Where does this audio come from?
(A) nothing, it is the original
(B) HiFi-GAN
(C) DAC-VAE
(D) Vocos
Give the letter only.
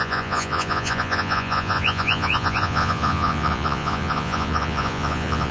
D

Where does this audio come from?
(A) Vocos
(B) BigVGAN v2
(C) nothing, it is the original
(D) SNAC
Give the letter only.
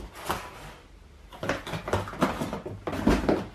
C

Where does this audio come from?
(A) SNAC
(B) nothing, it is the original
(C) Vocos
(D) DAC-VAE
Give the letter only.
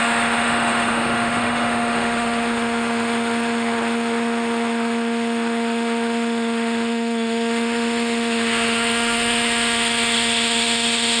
D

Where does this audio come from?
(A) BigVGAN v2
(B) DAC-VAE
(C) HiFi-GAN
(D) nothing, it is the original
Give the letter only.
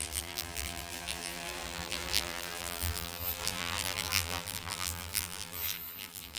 A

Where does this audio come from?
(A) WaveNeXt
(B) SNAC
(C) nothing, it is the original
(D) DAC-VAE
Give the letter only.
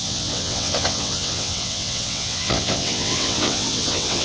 A